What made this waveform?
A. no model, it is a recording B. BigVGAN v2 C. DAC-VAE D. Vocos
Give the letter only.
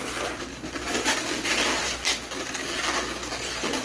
A